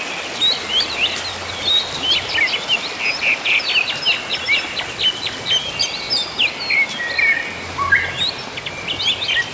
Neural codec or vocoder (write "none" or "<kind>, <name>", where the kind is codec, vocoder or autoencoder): none